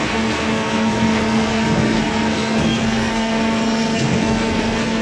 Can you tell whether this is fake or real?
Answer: fake